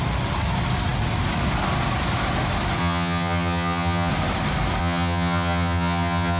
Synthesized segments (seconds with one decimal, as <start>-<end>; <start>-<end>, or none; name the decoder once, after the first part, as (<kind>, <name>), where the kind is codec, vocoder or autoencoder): 2.8-4.1 (vocoder, HiFi-GAN); 4.8-6.4